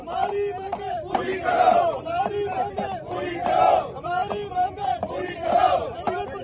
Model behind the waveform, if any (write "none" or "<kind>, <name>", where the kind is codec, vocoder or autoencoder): vocoder, BigVGAN v2